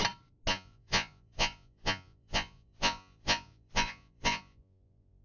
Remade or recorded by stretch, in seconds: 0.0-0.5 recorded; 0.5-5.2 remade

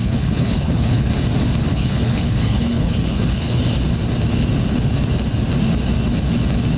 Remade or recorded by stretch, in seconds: 0.0-1.1 remade; 1.1-1.7 recorded; 1.7-3.6 remade; 3.6-6.8 recorded

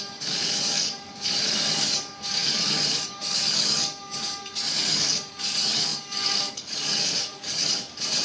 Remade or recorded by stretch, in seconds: 0.0-8.2 remade

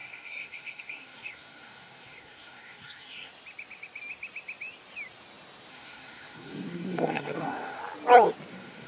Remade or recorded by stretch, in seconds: 0.0-3.3 remade; 3.3-5.7 recorded; 5.7-7.8 remade; 7.8-8.5 recorded; 8.5-8.9 remade

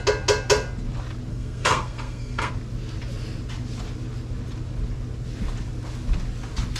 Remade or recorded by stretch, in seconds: 0.0-1.3 recorded; 1.3-2.5 remade; 2.5-6.8 recorded

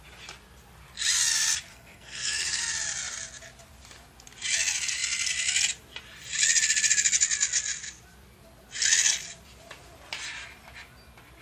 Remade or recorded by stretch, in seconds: 0.0-1.7 recorded; 1.7-2.6 remade; 2.6-11.4 recorded

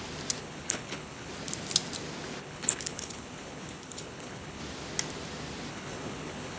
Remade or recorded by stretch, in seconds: 0.0-0.4 recorded; 0.4-1.3 remade; 1.3-2.4 recorded; 2.4-4.6 remade; 4.6-5.7 recorded; 5.7-6.6 remade

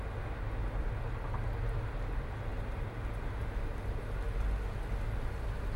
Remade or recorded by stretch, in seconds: 0.0-5.8 recorded